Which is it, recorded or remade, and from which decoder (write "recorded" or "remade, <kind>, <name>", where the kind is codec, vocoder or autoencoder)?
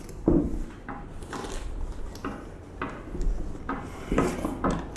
recorded